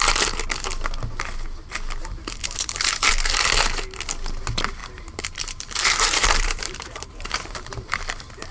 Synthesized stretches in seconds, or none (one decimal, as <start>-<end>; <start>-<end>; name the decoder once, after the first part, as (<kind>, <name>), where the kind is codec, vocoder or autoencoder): 2.0-3.1 (vocoder, BigVGAN v2); 4.8-8.0